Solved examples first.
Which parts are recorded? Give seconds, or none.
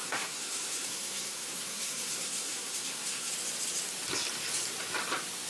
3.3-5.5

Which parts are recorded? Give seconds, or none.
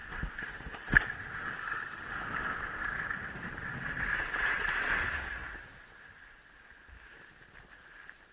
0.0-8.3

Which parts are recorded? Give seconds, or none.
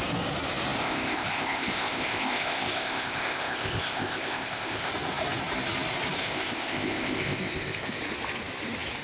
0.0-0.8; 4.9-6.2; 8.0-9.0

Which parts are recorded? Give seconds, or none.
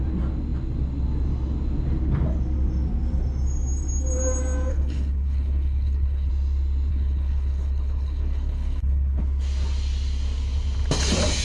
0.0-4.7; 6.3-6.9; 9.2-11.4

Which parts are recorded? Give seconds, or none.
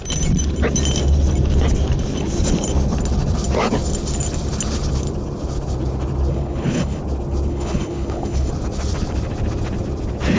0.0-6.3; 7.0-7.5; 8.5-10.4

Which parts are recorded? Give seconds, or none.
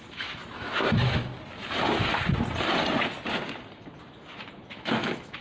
1.3-4.5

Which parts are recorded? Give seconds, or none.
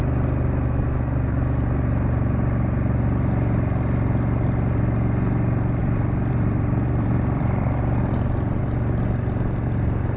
0.0-5.8; 8.6-10.2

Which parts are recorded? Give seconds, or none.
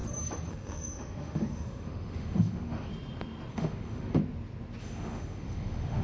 0.0-0.5; 2.9-3.5; 4.2-4.8